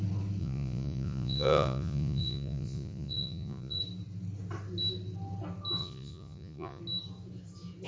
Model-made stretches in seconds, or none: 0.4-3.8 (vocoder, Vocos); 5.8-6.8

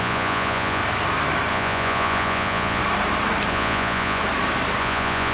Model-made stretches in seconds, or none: 0.0-0.8 (vocoder, Vocos); 1.5-2.8; 3.5-4.2; 4.8-5.3